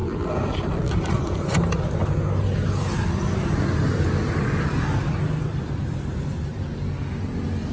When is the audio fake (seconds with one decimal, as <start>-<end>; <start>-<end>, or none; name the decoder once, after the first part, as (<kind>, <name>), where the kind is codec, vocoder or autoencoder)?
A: none